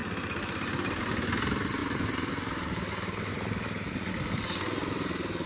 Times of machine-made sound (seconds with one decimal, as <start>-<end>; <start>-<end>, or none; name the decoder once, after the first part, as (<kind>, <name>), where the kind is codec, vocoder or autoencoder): 1.8-4.1 (vocoder, BigVGAN v2); 4.8-5.5